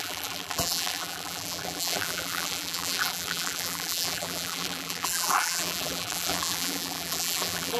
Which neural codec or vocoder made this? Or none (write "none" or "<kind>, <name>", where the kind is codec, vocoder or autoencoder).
vocoder, BigVGAN v2